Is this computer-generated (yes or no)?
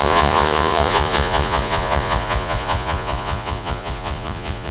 yes